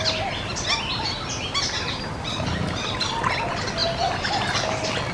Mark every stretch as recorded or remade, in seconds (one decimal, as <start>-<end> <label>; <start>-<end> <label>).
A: 0.0-0.9 recorded; 0.9-3.0 remade; 3.0-3.8 recorded; 3.8-4.3 remade; 4.3-5.1 recorded